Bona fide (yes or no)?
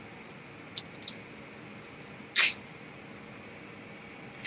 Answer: yes